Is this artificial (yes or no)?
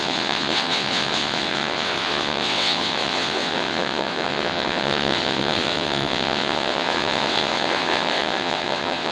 yes